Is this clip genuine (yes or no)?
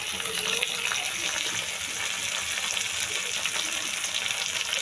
yes